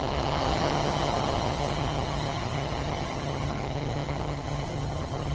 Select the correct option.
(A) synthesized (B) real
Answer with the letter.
A